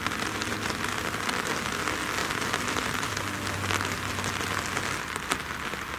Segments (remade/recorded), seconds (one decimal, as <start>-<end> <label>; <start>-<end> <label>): 0.0-2.2 recorded; 2.2-3.1 remade; 3.1-6.0 recorded